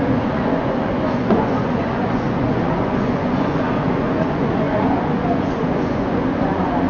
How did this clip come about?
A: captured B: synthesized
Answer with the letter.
B